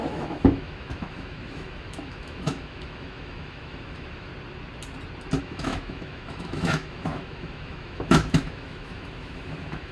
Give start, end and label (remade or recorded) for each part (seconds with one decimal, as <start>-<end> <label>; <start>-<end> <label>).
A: 0.0-4.3 remade; 4.3-5.4 recorded; 5.4-9.9 remade